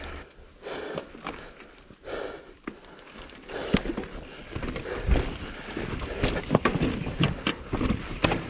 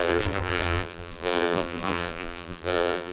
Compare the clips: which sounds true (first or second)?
first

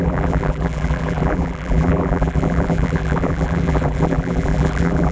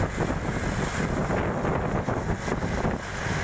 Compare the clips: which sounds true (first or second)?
second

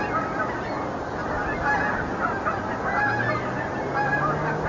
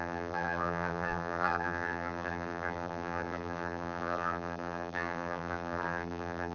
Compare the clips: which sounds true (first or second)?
first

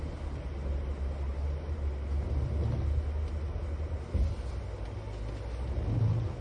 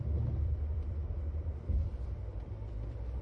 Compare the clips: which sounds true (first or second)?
first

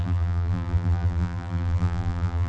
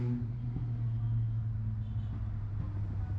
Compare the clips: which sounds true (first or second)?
second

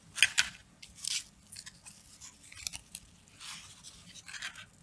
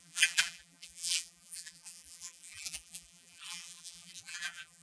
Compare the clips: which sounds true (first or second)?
first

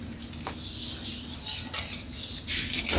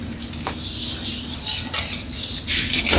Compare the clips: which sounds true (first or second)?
first